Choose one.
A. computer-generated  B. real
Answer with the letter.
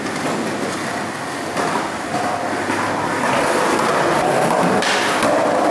B